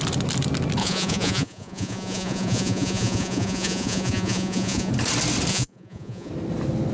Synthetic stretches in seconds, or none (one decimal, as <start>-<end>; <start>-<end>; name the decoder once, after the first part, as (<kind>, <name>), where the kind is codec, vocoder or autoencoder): 0.8-4.9 (vocoder, Vocos); 5.5-6.3